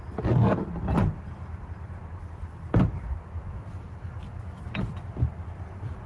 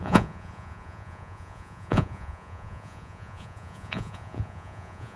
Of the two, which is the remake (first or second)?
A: second